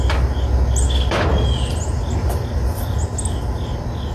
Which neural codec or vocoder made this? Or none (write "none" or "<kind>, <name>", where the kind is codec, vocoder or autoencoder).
none